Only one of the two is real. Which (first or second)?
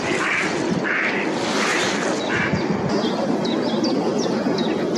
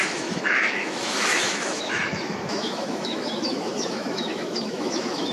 first